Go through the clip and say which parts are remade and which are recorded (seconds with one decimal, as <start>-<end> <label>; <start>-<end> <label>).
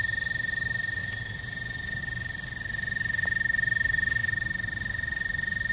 0.0-1.0 recorded; 1.0-2.0 remade; 2.0-5.7 recorded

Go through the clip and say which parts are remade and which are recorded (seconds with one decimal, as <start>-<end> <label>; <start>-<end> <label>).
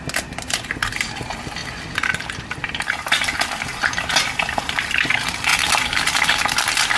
0.0-5.5 recorded; 5.5-6.3 remade; 6.3-7.0 recorded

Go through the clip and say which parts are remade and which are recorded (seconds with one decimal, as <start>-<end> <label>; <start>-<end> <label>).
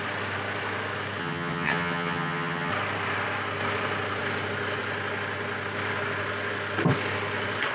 0.0-1.2 recorded; 1.2-2.7 remade; 2.7-7.7 recorded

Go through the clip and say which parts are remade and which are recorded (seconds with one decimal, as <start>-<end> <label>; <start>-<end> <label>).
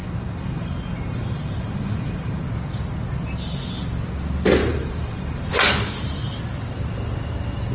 0.0-2.4 remade; 2.4-4.6 recorded; 4.6-5.5 remade; 5.5-7.7 recorded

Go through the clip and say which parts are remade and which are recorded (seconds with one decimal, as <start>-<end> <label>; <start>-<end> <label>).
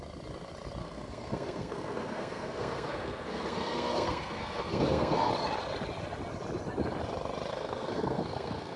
0.0-0.8 recorded; 0.8-5.3 remade; 5.3-7.5 recorded; 7.5-8.8 remade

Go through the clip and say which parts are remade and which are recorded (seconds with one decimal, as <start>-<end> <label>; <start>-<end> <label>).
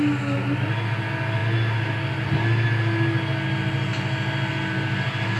0.0-5.4 recorded